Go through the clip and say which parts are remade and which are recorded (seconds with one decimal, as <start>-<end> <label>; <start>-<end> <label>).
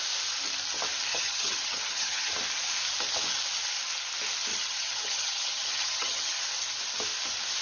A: 0.0-1.1 recorded; 1.1-2.3 remade; 2.3-4.5 recorded; 4.5-6.4 remade; 6.4-7.6 recorded